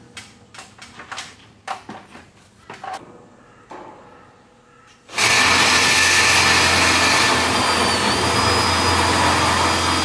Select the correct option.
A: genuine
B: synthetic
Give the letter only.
A